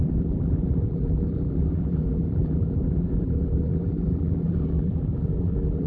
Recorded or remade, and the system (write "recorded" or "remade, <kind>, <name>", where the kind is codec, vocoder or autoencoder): remade, vocoder, BigVGAN v2